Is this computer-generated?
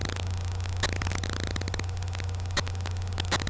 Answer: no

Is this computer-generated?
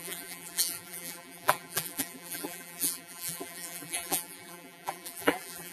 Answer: yes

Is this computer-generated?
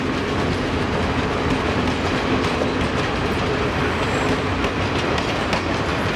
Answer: no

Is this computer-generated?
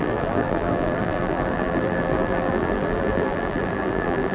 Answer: yes